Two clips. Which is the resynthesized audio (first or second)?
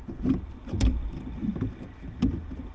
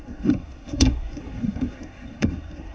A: second